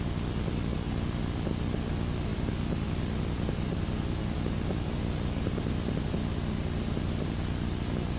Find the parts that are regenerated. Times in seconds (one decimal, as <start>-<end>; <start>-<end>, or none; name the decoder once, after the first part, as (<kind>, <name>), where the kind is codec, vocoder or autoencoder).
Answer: none